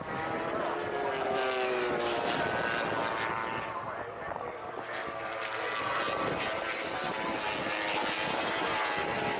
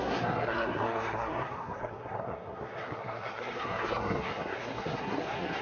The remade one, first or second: second